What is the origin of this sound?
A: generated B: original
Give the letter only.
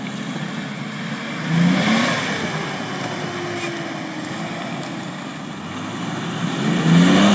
B